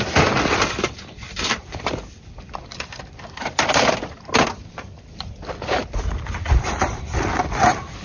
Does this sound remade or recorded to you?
remade